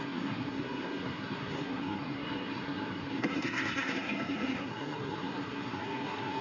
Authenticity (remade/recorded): remade